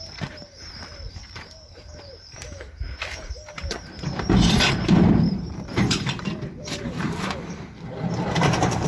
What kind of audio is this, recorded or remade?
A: remade